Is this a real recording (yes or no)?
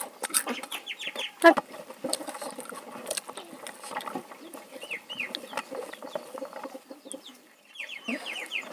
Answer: yes